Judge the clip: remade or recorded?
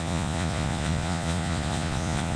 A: remade